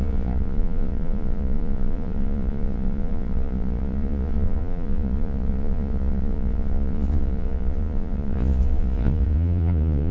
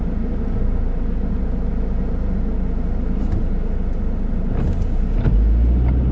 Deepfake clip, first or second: first